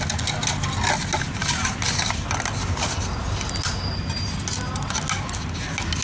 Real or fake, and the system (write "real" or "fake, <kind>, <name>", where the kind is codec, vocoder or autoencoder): real